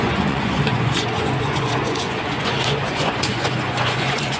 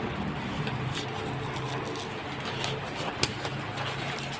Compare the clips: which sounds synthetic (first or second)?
first